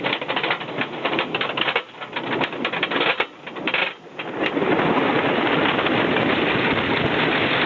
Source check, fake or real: real